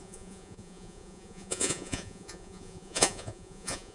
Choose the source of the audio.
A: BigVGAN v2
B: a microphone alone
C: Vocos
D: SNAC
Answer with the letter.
C